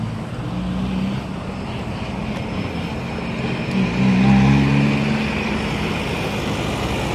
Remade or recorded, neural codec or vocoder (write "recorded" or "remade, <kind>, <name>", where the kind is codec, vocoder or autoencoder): recorded